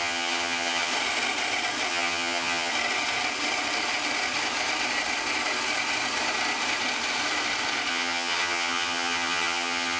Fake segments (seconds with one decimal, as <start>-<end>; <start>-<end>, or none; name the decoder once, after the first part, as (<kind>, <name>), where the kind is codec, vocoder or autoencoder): 0.0-0.9 (vocoder, HiFi-GAN); 1.9-2.7; 7.9-10.0